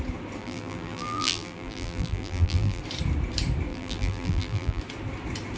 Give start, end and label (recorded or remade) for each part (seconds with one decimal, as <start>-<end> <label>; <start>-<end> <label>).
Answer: 0.0-0.4 recorded; 0.4-2.8 remade; 2.8-3.7 recorded; 3.7-4.8 remade; 4.8-5.6 recorded